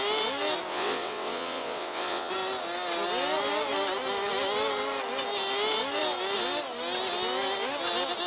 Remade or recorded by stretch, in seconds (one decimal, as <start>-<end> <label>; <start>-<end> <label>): 0.0-0.7 recorded; 0.7-2.3 remade; 2.3-8.3 recorded